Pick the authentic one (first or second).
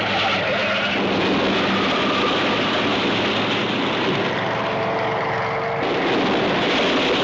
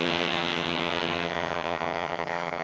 first